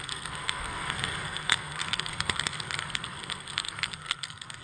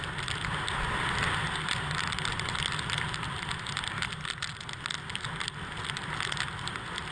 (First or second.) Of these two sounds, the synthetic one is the first